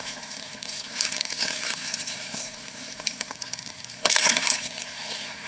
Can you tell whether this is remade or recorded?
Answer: remade